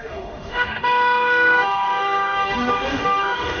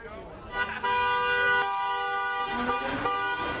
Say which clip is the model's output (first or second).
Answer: first